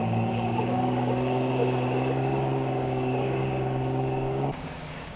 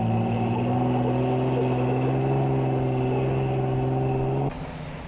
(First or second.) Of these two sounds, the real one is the second